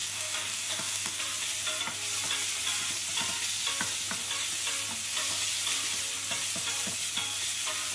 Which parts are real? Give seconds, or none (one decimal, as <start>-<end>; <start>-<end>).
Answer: 1.2-7.9

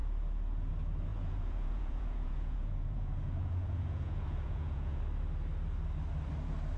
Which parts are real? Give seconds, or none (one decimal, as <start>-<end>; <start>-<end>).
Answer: 0.0-1.1; 5.0-6.8

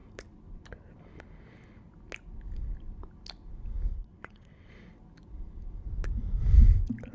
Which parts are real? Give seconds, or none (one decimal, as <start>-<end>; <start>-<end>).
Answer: 0.0-3.9; 4.7-7.1

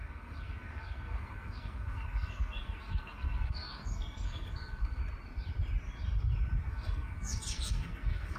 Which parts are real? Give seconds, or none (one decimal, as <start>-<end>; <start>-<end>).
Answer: 5.0-6.7

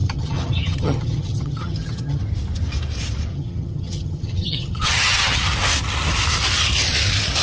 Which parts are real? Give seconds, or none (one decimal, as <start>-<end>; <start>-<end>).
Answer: 2.2-3.3; 5.4-7.4